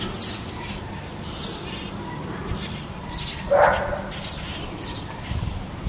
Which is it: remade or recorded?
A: recorded